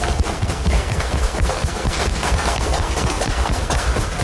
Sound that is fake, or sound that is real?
fake